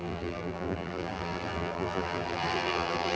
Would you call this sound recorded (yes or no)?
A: no